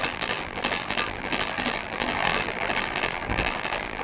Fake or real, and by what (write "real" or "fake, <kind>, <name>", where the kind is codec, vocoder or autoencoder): fake, vocoder, BigVGAN v2